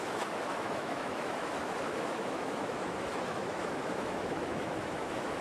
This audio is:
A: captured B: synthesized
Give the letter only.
B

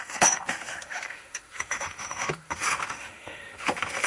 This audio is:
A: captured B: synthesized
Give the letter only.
B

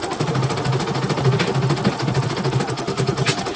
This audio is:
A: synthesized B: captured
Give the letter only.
B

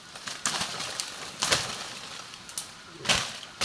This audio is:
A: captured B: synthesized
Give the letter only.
A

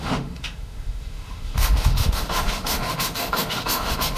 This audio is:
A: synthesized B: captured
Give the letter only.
A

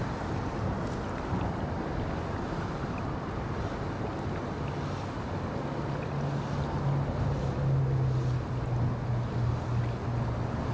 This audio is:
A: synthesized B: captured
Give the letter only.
B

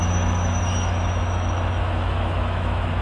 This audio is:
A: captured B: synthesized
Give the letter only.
B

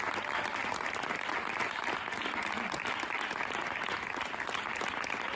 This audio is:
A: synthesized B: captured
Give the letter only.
B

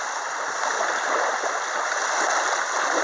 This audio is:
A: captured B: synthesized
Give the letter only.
A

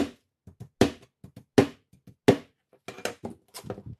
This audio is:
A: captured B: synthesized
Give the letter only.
A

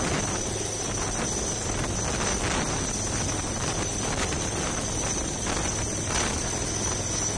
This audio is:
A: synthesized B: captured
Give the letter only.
B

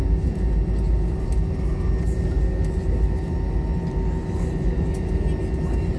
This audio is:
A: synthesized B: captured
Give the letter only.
B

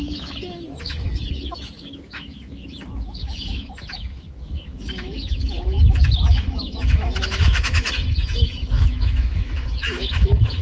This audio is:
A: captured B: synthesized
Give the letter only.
B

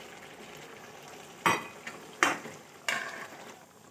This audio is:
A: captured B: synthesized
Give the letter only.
A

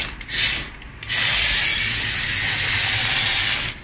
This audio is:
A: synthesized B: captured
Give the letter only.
B